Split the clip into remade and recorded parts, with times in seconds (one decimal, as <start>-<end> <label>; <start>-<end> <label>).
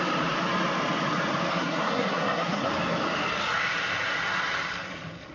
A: 0.0-1.5 recorded; 1.5-2.7 remade; 2.7-5.3 recorded